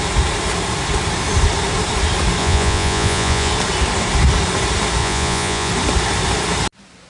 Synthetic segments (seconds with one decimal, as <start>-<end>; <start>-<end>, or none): 2.4-3.5; 5.0-5.7